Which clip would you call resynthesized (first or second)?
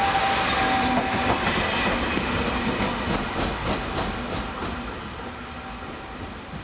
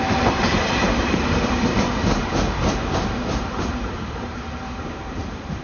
second